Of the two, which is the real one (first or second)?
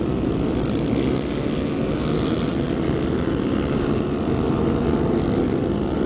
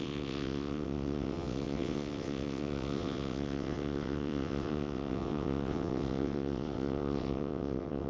first